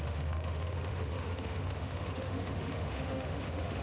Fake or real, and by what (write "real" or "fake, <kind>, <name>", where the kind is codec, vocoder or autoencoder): fake, autoencoder, DAC-VAE